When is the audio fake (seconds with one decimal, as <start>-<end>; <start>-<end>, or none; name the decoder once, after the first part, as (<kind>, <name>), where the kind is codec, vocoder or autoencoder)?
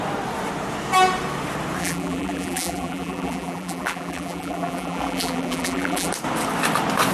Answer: 1.8-6.1 (vocoder, BigVGAN v2)